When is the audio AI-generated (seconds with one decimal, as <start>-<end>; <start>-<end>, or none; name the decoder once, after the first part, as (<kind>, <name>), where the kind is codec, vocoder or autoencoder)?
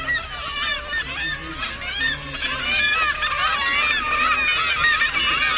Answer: none